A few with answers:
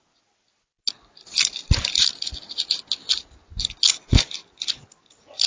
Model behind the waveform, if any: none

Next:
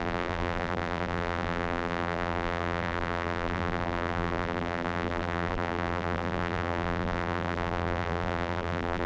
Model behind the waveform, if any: vocoder, BigVGAN v2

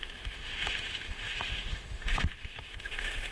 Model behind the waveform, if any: autoencoder, DAC-VAE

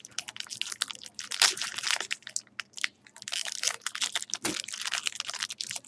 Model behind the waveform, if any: none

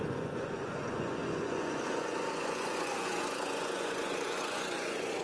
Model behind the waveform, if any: vocoder, Vocos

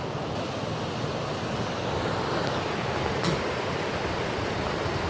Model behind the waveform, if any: none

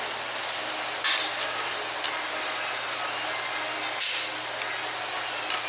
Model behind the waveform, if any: none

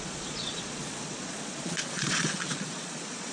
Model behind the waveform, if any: vocoder, Vocos